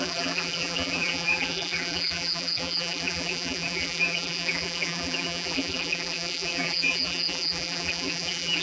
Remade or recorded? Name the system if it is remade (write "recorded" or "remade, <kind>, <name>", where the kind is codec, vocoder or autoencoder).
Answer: remade, vocoder, BigVGAN v2